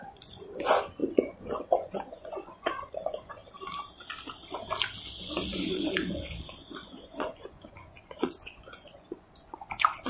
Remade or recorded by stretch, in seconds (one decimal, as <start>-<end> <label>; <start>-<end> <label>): 0.0-3.4 remade; 3.4-5.2 recorded; 5.2-10.1 remade